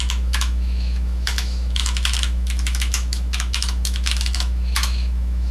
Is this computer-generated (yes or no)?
yes